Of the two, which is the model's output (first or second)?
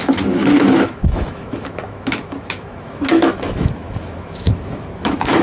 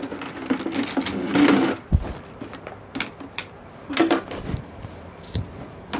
first